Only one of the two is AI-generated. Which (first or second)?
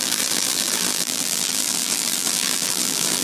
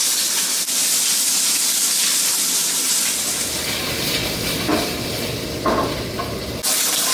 first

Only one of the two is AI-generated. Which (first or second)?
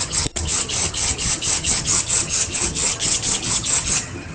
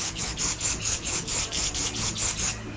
first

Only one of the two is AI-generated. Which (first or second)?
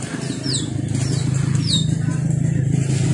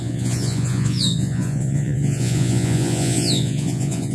second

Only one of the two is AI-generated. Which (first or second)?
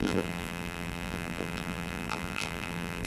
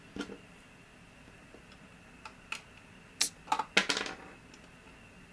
first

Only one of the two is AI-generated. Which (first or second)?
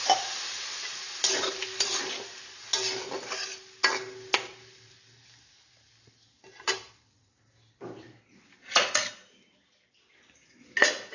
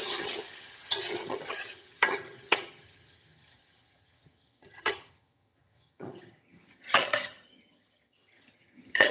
second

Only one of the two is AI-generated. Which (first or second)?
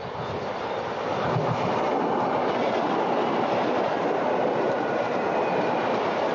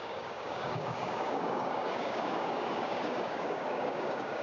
second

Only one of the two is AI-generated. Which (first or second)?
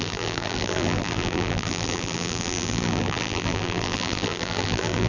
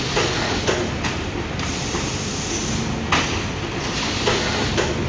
first